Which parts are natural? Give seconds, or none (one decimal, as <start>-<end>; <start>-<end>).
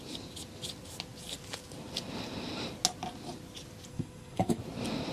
0.0-3.9; 4.6-5.1